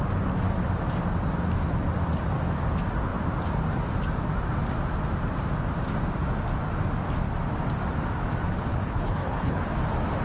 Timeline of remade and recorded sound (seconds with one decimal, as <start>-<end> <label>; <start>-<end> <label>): 0.0-8.7 recorded; 8.7-9.6 remade; 9.6-10.2 recorded